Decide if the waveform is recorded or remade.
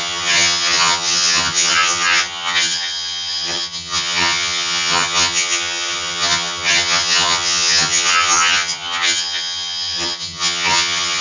remade